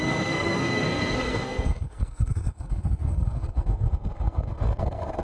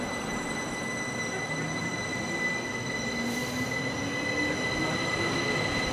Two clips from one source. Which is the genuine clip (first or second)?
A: second